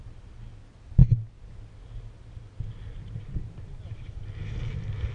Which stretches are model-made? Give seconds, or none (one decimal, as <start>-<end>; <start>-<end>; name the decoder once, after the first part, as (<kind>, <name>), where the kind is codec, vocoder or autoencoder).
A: none